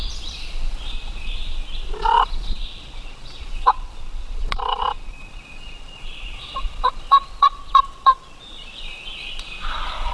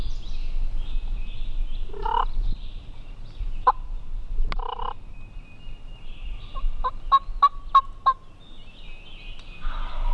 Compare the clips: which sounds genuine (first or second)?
second